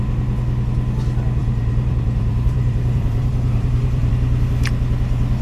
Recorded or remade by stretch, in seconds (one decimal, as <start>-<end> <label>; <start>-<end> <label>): 0.0-1.4 recorded; 1.4-4.1 remade; 4.1-5.4 recorded